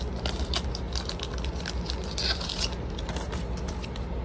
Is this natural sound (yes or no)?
yes